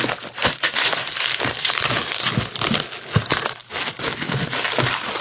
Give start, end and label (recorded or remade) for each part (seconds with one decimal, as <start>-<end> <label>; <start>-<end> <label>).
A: 0.0-0.4 recorded; 0.4-1.1 remade; 1.1-5.2 recorded